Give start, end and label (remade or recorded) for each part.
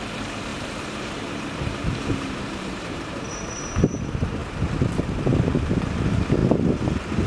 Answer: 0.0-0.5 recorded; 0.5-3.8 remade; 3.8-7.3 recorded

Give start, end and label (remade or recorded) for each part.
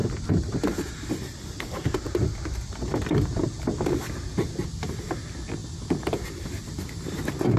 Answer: 0.0-7.6 recorded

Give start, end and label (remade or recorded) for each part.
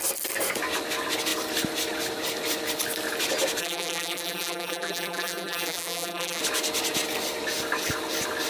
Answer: 0.0-3.6 recorded; 3.6-6.4 remade; 6.4-8.5 recorded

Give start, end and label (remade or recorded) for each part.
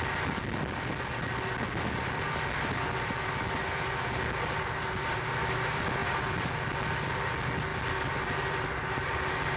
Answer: 0.0-9.6 recorded